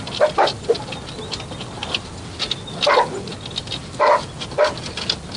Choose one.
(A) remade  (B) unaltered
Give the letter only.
B